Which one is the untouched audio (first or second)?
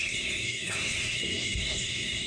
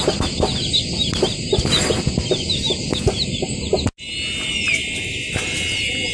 second